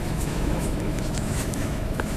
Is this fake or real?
fake